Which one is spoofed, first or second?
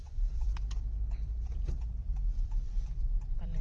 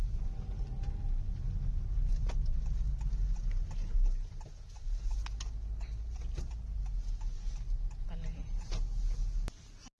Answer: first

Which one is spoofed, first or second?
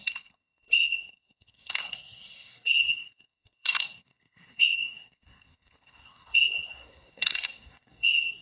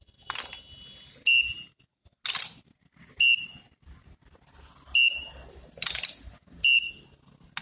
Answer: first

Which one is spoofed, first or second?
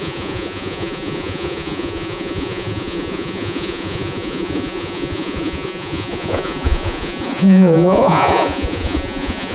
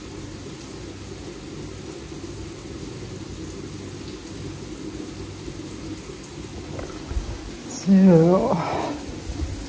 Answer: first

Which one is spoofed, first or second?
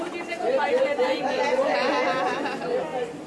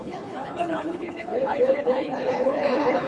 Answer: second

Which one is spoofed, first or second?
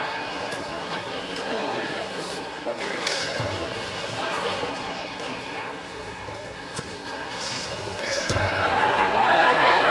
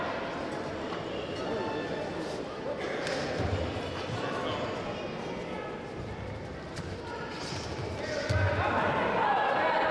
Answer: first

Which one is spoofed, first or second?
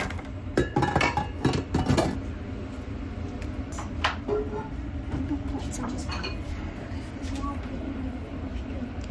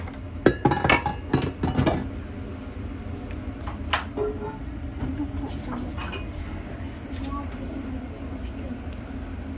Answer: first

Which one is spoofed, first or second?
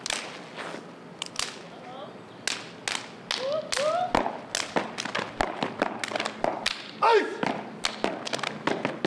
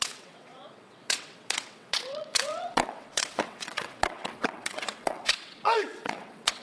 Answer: second